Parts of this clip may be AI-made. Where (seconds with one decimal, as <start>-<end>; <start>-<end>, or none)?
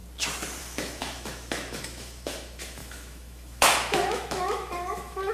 0.6-5.3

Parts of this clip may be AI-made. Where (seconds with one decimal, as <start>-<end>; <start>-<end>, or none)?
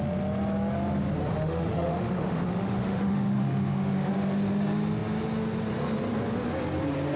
1.3-4.1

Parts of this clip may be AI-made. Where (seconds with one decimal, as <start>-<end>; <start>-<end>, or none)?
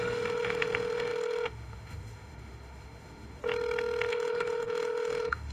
0.0-3.4; 4.1-5.5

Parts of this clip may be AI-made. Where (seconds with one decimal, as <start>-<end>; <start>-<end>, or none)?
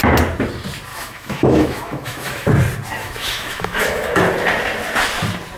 0.9-2.5; 3.0-4.2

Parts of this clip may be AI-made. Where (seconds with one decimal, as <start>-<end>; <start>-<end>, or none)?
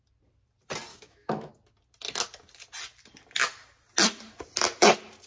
0.9-1.5